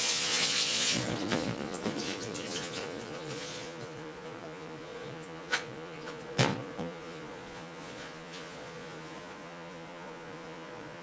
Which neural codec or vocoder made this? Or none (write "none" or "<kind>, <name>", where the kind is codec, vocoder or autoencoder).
vocoder, Vocos